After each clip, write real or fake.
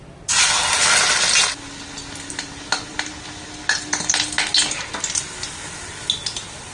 real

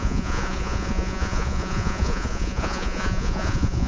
fake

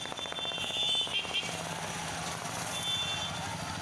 real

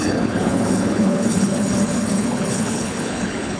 fake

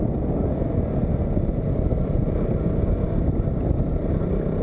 real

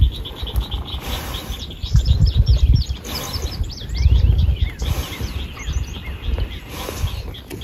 fake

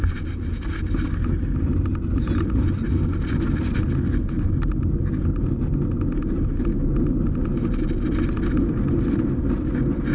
real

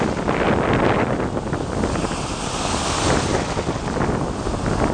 real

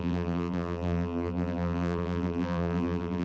fake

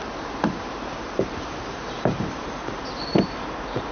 fake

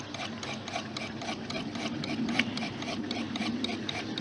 fake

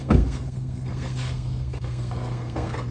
fake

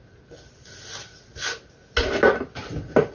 real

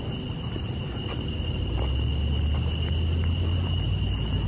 real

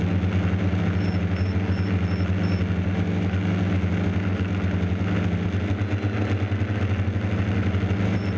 real